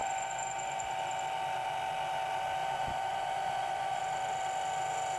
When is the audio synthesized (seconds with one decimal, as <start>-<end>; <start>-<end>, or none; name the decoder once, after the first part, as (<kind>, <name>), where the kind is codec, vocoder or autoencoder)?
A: 0.0-0.9 (vocoder, Vocos); 2.6-4.0